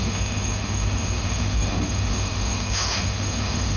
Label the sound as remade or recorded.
remade